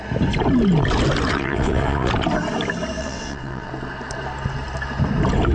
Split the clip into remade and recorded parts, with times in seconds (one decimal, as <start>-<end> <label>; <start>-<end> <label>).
0.0-1.3 recorded; 1.3-2.1 remade; 2.1-3.0 recorded; 3.0-3.7 remade; 3.7-5.5 recorded